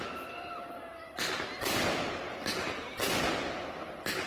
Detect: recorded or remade recorded